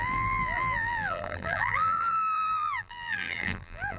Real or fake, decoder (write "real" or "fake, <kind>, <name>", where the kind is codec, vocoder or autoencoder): fake, vocoder, BigVGAN v2